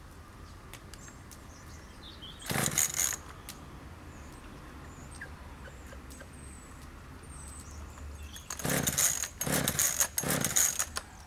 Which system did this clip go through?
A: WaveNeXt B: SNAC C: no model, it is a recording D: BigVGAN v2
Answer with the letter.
C